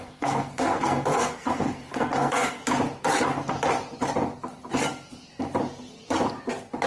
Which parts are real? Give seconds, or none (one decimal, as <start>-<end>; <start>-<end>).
2.6-6.9